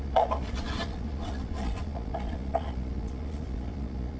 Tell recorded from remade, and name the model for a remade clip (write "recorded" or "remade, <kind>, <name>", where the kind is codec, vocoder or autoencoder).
remade, vocoder, Vocos